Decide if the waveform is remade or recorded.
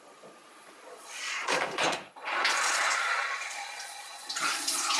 remade